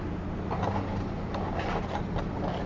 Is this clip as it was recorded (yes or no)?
yes